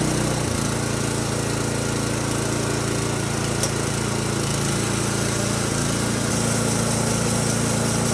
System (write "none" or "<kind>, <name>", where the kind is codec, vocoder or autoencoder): none